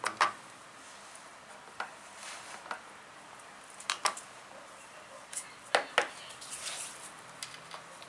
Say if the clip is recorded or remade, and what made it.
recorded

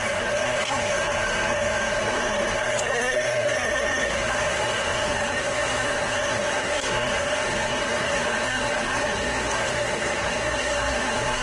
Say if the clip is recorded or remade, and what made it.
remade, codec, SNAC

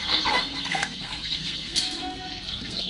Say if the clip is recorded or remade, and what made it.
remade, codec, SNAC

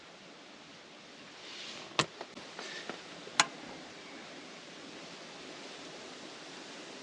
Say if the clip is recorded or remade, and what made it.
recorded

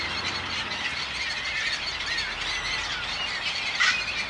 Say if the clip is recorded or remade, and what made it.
recorded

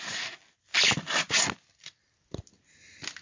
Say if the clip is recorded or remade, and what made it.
recorded